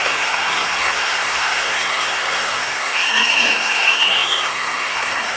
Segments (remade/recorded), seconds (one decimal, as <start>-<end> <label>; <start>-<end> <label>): 0.0-5.4 remade